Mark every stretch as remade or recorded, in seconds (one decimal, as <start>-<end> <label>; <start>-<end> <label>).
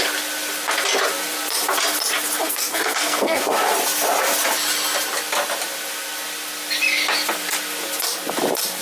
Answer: 0.0-2.4 recorded; 2.4-3.4 remade; 3.4-8.8 recorded